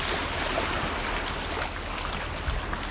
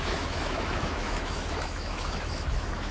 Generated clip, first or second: second